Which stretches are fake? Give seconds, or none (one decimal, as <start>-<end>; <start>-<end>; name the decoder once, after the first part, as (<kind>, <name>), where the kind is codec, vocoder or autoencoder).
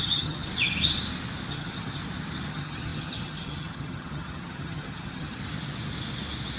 0.0-0.5 (vocoder, HiFi-GAN); 1.5-2.0; 2.5-5.4